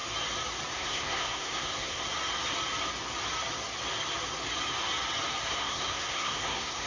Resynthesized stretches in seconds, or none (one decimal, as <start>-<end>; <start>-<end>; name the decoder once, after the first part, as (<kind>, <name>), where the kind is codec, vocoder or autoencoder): 0.7-2.0 (codec, SNAC); 5.5-6.9